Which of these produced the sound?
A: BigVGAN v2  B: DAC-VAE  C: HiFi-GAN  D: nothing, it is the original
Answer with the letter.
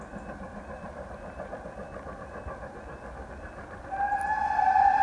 A